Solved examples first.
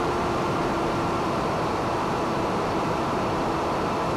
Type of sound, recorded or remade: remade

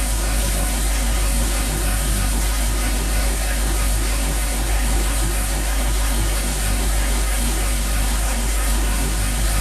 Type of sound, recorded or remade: remade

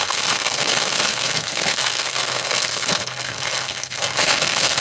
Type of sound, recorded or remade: remade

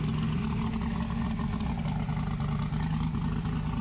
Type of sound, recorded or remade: recorded